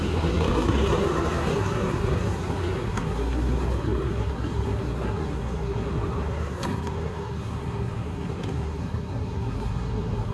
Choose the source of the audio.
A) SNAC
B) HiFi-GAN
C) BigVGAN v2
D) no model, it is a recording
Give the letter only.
A